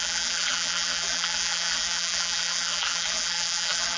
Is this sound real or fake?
fake